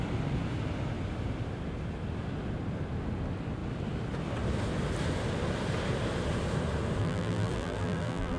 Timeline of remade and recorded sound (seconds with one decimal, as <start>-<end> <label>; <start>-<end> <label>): 0.0-7.0 recorded; 7.0-8.4 remade